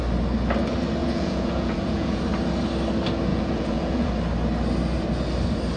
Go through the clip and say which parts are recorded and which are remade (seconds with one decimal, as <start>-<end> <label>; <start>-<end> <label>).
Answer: 0.0-1.0 recorded; 1.0-2.2 remade; 2.2-3.3 recorded; 3.3-4.1 remade; 4.1-5.8 recorded